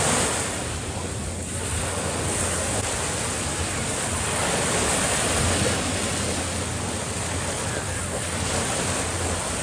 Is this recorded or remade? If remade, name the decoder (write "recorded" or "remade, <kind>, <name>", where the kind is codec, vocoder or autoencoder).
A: recorded